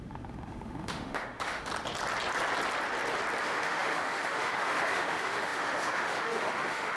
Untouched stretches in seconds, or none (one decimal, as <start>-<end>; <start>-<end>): 1.7-3.4